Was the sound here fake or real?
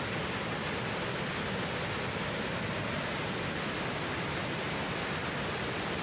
real